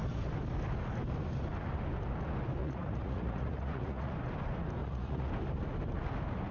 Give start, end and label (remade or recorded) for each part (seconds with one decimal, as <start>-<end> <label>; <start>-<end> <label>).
0.0-2.6 recorded; 2.6-4.1 remade; 4.1-4.8 recorded; 4.8-5.3 remade; 5.3-6.5 recorded